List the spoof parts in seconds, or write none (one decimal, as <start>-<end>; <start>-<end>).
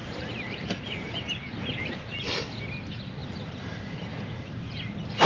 0.0-1.7; 3.2-4.7